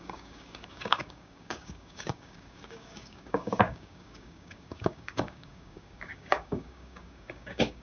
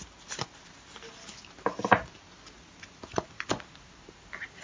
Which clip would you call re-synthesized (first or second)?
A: first